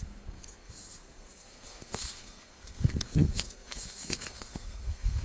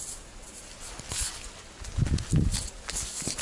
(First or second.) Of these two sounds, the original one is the second